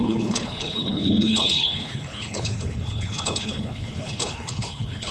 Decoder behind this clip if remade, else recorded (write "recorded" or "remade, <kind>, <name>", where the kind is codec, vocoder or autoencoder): remade, codec, HILCodec